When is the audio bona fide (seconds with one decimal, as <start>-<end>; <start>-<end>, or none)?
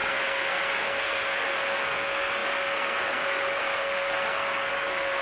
none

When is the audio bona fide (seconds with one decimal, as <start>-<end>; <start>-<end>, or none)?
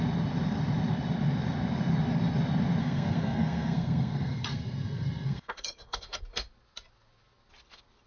0.0-2.8; 6.2-8.1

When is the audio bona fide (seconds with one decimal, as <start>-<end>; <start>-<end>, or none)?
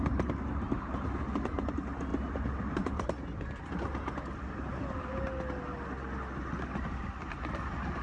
0.0-8.0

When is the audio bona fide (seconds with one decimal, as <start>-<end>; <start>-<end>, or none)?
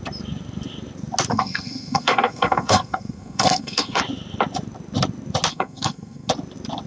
0.0-1.3; 4.0-5.5; 6.3-6.9